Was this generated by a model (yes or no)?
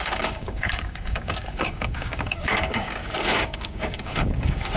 yes